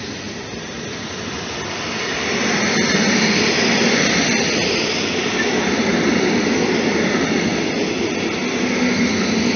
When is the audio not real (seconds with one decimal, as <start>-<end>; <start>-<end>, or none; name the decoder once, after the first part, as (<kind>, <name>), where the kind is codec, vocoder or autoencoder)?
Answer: 0.0-9.6 (vocoder, BigVGAN v2)

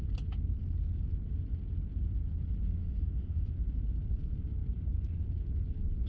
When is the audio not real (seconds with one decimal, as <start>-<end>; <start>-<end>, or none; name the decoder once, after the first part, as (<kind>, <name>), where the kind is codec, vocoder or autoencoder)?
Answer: 2.8-3.5 (autoencoder, DAC-VAE)

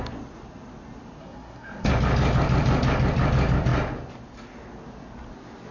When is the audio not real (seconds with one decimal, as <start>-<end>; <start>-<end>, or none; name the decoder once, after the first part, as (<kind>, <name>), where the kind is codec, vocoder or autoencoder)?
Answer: 1.2-1.9 (codec, SNAC)

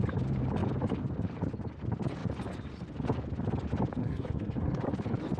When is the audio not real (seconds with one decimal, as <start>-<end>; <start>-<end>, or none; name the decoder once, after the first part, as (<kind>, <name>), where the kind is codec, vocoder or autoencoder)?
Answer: 4.0-4.9 (codec, SNAC)

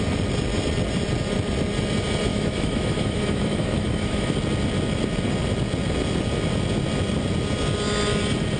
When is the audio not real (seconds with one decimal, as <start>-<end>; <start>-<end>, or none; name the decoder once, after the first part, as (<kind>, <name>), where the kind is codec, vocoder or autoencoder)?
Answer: 2.3-4.3 (autoencoder, DAC-VAE)

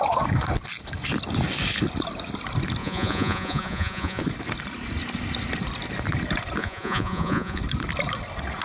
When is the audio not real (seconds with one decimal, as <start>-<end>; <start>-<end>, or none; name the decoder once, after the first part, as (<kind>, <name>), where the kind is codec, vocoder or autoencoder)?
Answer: 2.8-4.2 (vocoder, Vocos); 6.6-7.6